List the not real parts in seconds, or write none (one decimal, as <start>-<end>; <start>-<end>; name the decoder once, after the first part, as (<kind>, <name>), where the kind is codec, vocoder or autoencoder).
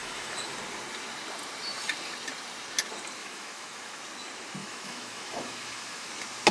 0.0-0.5 (autoencoder, DAC-VAE); 3.2-4.0; 4.6-6.1